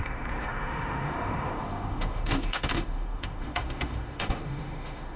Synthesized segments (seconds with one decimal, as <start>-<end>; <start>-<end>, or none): 0.0-5.2